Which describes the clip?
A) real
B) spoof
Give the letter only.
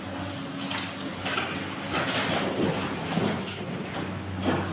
A